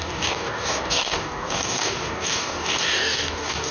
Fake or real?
fake